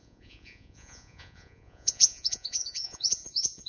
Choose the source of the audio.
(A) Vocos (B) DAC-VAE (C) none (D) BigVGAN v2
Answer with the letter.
A